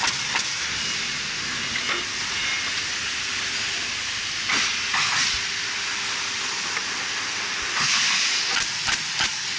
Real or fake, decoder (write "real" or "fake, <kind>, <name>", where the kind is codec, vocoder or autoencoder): real